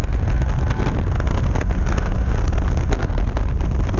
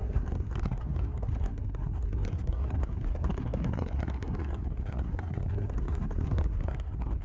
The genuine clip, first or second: first